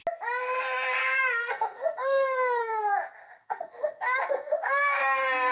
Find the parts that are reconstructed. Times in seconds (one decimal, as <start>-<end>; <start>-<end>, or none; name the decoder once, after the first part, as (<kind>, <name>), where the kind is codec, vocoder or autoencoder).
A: 1.0-2.8 (codec, SNAC); 3.4-5.0